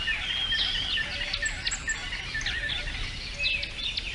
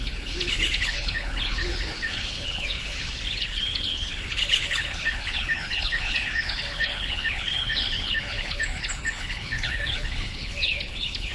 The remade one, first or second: second